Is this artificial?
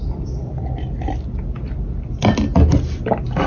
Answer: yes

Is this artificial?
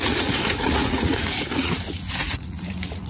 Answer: yes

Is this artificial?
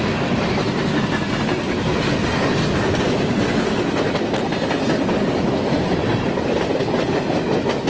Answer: no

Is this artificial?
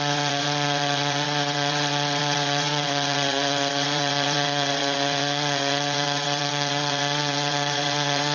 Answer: yes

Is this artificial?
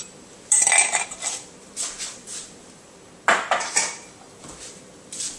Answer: no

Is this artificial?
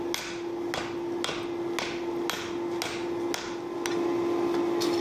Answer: no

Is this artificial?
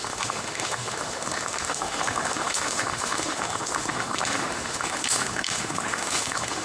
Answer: yes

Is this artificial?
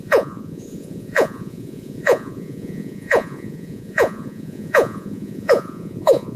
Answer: yes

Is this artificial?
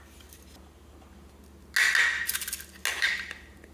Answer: no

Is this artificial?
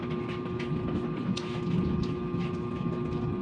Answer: no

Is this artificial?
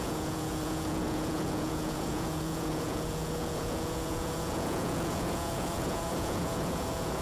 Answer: yes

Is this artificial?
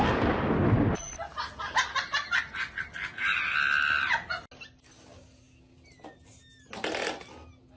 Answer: no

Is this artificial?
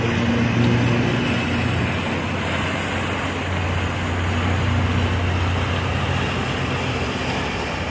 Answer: no